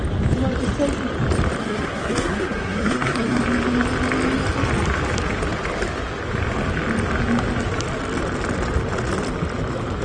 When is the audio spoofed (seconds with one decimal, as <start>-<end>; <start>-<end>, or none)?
1.6-3.4